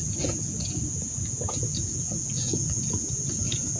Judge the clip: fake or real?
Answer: fake